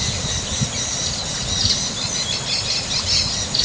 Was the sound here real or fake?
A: real